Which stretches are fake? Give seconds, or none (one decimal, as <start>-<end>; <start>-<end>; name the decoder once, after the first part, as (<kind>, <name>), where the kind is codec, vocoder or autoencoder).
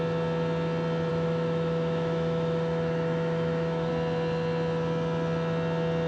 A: 1.1-3.9 (autoencoder, DAC-VAE)